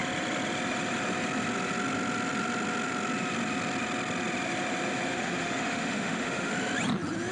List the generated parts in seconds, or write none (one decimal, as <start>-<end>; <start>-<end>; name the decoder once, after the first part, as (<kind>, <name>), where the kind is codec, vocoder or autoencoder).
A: 5.1-6.5 (autoencoder, DAC-VAE)